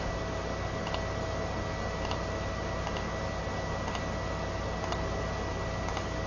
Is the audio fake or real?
real